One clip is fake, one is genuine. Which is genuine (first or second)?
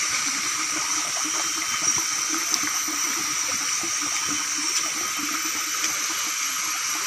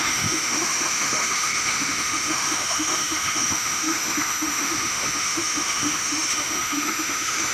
first